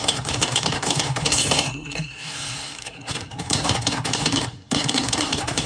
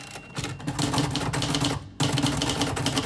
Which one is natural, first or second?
second